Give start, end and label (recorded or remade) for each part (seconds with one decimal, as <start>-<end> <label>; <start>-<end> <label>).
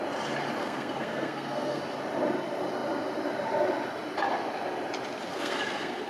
0.0-0.6 recorded; 0.6-1.8 remade; 1.8-5.3 recorded; 5.3-6.1 remade